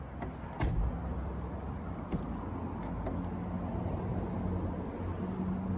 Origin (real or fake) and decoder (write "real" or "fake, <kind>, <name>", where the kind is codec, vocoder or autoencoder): real